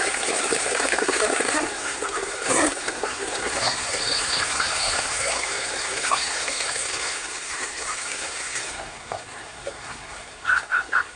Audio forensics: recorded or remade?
remade